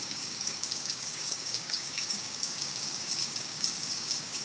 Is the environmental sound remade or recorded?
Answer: remade